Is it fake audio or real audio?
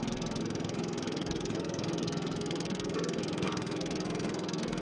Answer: fake